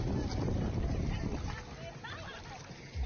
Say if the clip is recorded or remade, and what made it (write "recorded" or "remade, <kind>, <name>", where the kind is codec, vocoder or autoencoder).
recorded